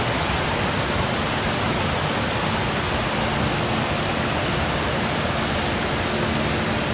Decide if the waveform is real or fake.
real